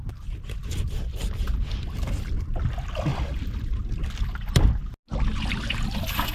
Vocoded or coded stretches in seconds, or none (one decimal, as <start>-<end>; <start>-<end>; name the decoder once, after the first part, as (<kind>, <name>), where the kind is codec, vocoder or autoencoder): none